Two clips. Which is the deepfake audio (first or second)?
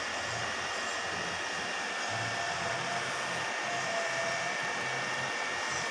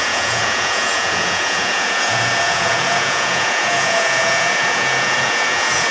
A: second